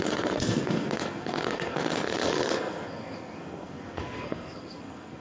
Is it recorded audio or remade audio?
remade